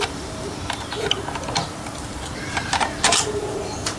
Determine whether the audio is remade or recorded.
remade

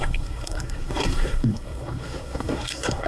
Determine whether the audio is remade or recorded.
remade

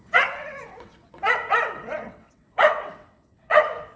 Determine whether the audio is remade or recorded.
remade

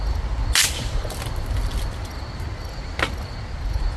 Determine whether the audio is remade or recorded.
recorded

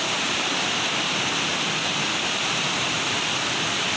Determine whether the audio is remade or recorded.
remade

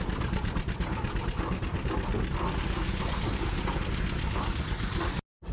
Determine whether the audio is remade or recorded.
recorded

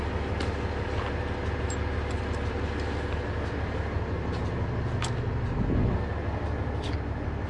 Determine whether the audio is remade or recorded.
recorded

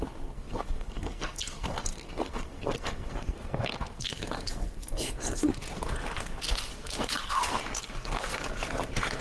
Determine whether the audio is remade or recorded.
remade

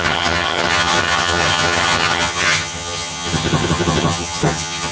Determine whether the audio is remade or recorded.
remade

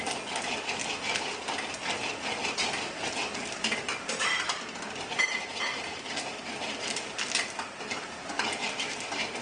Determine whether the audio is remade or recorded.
recorded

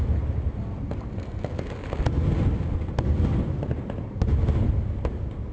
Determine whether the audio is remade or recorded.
recorded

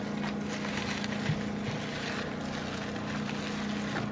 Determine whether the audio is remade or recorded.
recorded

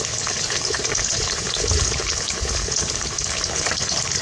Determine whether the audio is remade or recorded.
remade